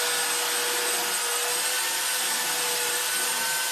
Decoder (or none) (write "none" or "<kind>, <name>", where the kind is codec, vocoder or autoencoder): none